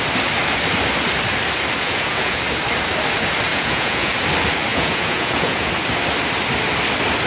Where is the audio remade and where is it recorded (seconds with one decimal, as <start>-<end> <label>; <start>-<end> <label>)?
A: 0.0-1.8 recorded; 1.8-2.4 remade; 2.4-3.5 recorded; 3.5-4.1 remade; 4.1-4.7 recorded; 4.7-5.7 remade; 5.7-7.3 recorded